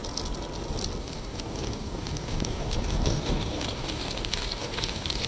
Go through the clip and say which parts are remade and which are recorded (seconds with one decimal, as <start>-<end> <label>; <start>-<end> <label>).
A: 0.0-1.0 recorded; 1.0-5.3 remade